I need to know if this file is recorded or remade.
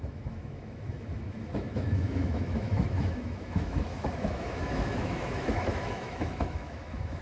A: remade